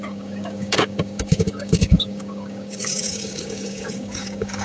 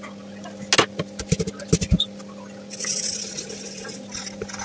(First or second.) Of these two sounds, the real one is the second